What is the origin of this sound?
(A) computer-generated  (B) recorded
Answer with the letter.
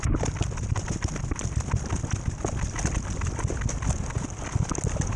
B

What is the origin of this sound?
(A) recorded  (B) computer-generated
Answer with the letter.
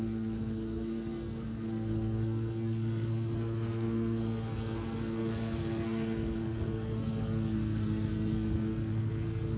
B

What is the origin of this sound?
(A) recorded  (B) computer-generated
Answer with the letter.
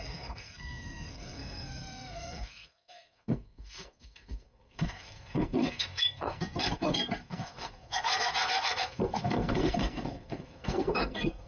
B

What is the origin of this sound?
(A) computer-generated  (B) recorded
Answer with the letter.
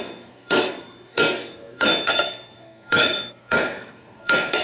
A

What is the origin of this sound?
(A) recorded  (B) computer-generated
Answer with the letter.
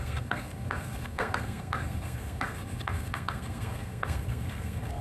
B